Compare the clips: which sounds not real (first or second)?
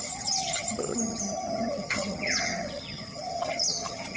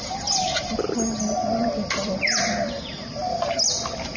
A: first